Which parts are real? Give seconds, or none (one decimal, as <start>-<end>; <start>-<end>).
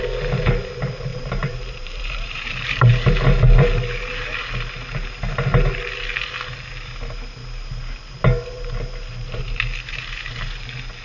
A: 0.0-1.1; 2.9-9.1; 9.6-11.0